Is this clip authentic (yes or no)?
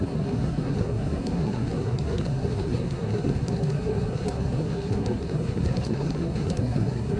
no